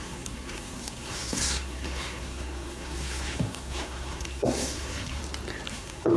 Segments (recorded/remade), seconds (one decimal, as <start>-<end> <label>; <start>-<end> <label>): 0.0-5.2 remade; 5.2-5.7 recorded; 5.7-6.2 remade